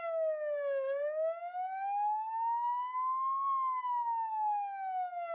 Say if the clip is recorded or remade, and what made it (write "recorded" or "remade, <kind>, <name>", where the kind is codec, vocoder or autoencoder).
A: recorded